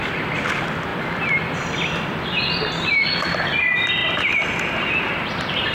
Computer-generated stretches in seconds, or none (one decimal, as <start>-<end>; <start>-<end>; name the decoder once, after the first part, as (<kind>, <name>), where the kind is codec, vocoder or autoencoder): 0.9-3.6 (vocoder, BigVGAN v2); 4.0-5.7